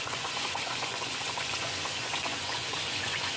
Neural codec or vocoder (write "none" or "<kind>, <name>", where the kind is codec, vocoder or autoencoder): vocoder, Vocos